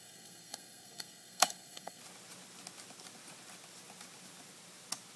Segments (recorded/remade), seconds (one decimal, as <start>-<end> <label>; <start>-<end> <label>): 0.0-2.0 remade; 2.0-5.2 recorded